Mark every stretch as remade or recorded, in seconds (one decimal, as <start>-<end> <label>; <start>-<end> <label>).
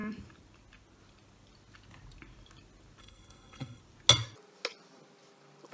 0.0-3.0 recorded; 3.0-3.8 remade; 3.8-5.7 recorded